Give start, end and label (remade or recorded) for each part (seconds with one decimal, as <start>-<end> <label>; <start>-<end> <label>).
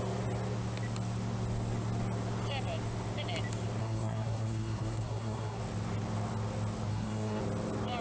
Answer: 0.0-3.8 recorded; 3.8-5.6 remade; 5.6-6.9 recorded; 6.9-7.4 remade; 7.4-8.0 recorded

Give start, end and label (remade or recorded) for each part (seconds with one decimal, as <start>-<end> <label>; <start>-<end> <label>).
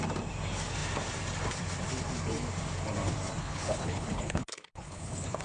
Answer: 0.0-3.4 recorded; 3.4-5.4 remade